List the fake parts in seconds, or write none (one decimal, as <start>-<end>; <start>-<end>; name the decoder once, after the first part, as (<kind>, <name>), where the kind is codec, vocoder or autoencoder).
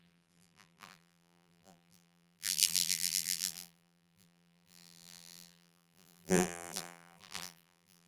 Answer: 0.0-8.1 (vocoder, BigVGAN v2)